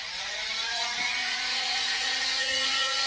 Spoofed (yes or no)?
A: yes